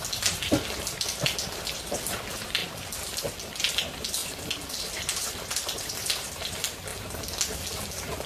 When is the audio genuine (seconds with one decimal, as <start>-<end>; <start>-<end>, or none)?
2.6-3.6; 4.2-4.7; 6.9-8.3